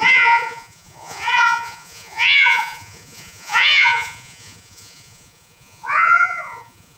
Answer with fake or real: fake